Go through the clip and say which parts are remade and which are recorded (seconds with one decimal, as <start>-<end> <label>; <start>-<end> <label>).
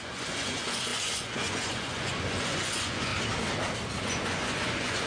0.0-3.1 remade; 3.1-4.0 recorded; 4.0-5.1 remade